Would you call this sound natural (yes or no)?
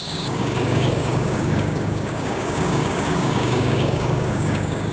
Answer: no